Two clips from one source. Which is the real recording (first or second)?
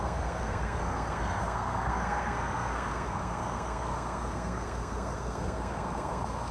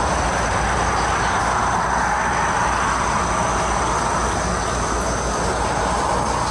second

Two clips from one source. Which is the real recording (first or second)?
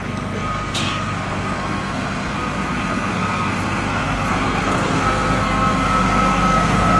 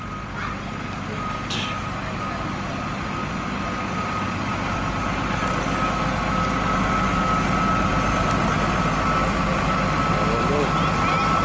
second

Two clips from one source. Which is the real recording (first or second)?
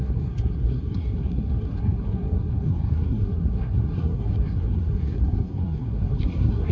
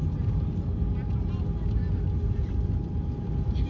second